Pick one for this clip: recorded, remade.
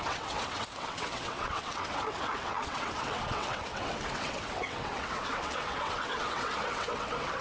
remade